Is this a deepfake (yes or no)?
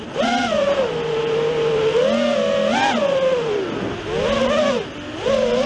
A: no